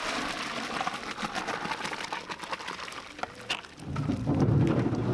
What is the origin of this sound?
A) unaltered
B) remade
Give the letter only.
A